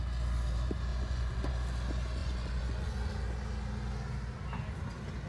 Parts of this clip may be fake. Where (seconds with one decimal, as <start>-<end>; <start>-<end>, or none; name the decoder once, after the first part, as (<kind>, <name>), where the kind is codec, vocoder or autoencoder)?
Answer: 0.9-1.5 (vocoder, Vocos); 2.2-3.1